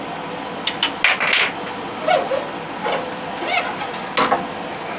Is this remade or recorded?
recorded